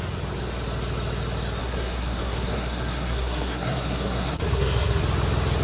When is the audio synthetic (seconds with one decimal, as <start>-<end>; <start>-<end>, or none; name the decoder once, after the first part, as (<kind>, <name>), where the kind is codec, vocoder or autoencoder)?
1.6-5.0 (codec, SNAC)